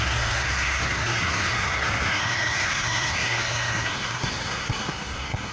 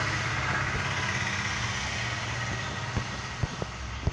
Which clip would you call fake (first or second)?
first